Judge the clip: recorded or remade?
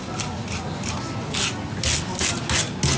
recorded